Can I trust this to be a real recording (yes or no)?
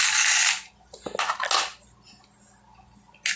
yes